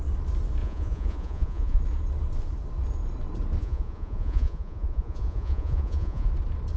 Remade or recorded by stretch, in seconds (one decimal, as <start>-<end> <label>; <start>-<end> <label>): 0.0-0.6 recorded; 0.6-1.8 remade; 1.8-3.6 recorded; 3.6-6.3 remade; 6.3-6.8 recorded